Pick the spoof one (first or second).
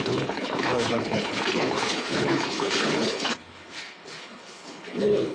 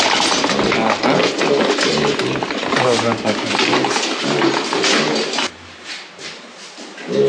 first